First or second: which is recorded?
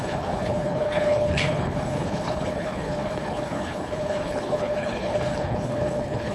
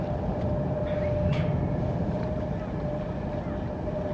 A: second